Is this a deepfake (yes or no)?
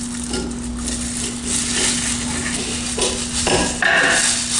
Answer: no